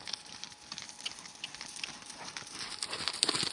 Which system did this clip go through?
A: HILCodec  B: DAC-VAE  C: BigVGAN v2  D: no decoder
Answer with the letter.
C